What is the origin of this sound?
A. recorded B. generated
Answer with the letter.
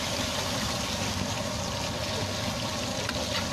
A